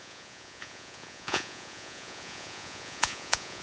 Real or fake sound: fake